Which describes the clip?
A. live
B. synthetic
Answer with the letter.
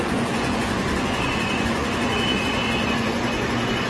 B